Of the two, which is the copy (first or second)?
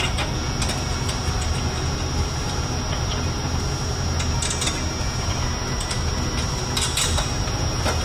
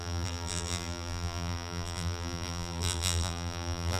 second